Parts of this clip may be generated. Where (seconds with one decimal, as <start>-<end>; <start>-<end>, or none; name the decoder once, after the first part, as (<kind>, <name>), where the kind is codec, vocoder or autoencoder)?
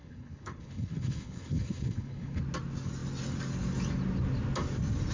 0.0-2.4 (codec, HILCodec)